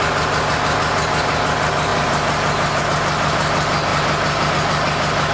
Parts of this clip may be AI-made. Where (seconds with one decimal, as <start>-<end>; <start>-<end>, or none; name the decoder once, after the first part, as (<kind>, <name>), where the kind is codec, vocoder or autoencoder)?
1.9-2.8 (vocoder, BigVGAN v2); 3.9-4.5